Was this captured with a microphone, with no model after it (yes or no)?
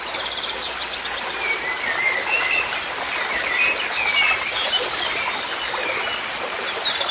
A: yes